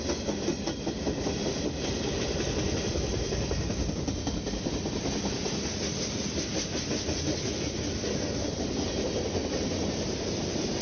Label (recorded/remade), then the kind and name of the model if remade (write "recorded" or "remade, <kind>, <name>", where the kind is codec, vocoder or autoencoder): recorded